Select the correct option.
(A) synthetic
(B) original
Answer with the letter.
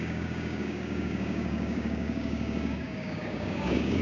A